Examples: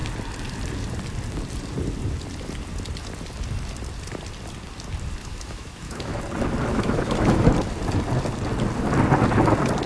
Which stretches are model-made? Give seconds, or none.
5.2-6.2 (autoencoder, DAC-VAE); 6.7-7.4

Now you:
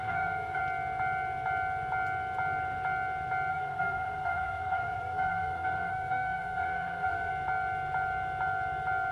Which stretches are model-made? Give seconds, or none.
0.0-0.6 (codec, SNAC); 3.5-7.3

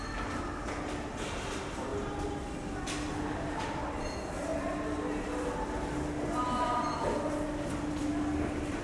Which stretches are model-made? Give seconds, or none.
none

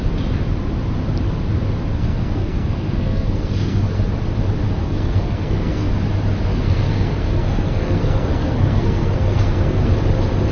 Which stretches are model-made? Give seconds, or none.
1.9-4.0 (codec, SNAC); 4.8-5.9; 6.5-9.9

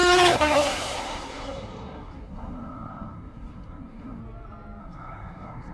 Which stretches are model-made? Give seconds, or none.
0.0-4.2 (codec, SNAC); 4.8-5.7

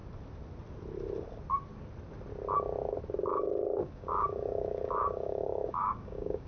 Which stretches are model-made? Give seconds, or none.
3.8-6.5 (codec, DAC)

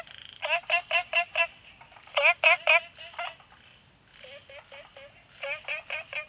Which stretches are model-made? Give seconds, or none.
none

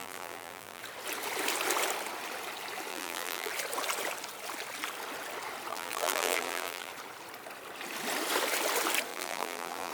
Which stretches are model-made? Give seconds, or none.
0.0-0.8 (vocoder, BigVGAN v2); 2.9-3.5; 5.7-6.9; 9.1-9.9